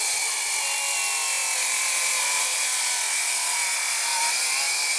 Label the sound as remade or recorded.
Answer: recorded